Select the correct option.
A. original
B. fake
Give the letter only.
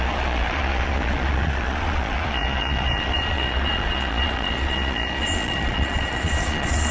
B